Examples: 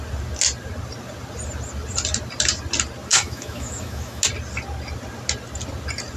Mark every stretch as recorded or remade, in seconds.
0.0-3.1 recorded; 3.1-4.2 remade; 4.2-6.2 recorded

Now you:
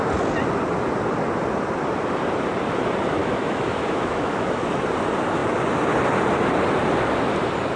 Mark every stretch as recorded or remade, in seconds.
0.0-3.2 recorded; 3.2-4.7 remade; 4.7-7.8 recorded

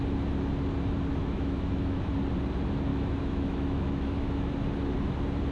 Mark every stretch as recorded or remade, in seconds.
0.0-1.2 recorded; 1.2-2.1 remade; 2.1-2.9 recorded; 2.9-4.5 remade; 4.5-5.5 recorded

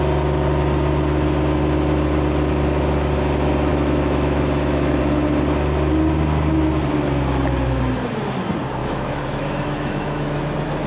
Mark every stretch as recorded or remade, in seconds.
0.0-3.7 recorded; 3.7-5.0 remade; 5.0-8.8 recorded; 8.8-10.4 remade; 10.4-10.9 recorded

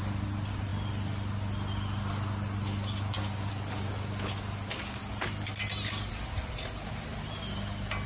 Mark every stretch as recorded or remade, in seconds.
0.0-8.1 recorded

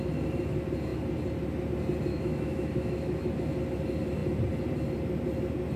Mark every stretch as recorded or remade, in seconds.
0.0-2.1 recorded; 2.1-3.3 remade; 3.3-5.8 recorded